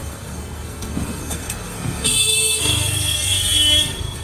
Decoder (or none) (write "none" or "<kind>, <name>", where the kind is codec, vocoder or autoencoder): codec, SNAC